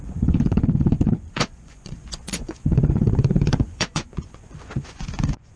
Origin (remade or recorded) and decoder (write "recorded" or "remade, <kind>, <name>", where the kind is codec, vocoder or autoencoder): remade, vocoder, Vocos